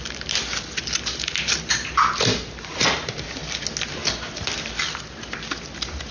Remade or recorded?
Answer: recorded